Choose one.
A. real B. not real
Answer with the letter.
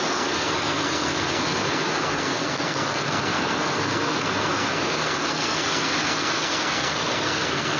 B